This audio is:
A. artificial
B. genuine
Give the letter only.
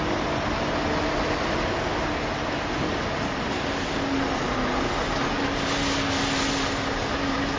B